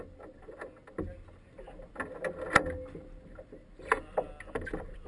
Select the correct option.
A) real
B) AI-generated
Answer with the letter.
A